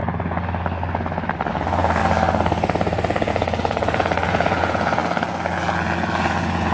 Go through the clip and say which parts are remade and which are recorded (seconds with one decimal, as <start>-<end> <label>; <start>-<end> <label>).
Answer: 0.0-1.5 recorded; 1.5-2.0 remade; 2.0-3.3 recorded; 3.3-5.0 remade; 5.0-6.2 recorded; 6.2-6.7 remade